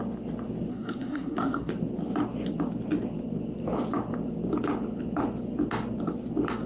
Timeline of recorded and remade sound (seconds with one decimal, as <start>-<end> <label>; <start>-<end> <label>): 0.0-0.7 recorded; 0.7-1.7 remade; 1.7-6.7 recorded

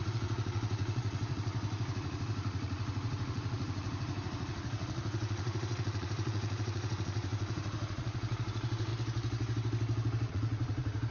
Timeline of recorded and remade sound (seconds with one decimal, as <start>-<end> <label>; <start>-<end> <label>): 0.0-8.9 remade; 8.9-10.3 recorded; 10.3-11.1 remade

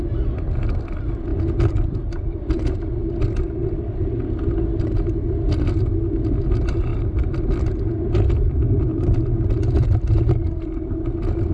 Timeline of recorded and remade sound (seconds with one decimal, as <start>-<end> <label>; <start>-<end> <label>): 0.0-6.9 recorded; 6.9-7.4 remade; 7.4-8.9 recorded; 8.9-9.6 remade; 9.6-11.5 recorded

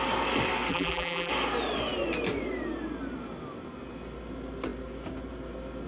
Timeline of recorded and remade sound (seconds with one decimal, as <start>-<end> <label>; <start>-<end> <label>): 0.0-0.7 recorded; 0.7-1.3 remade; 1.3-5.9 recorded

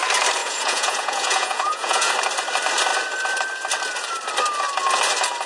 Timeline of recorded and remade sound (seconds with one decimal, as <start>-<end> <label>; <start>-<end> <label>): 0.0-0.4 recorded; 0.4-2.1 remade; 2.1-5.5 recorded